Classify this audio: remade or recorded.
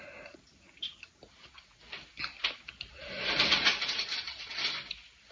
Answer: recorded